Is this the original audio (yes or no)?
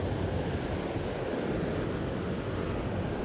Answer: yes